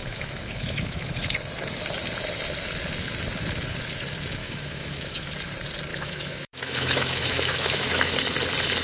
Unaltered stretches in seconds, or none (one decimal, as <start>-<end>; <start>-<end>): 1.3-4.4; 5.3-5.9; 8.1-8.8